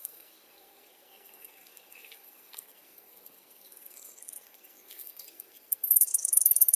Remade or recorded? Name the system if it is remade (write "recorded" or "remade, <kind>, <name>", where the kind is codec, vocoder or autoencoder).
remade, codec, SNAC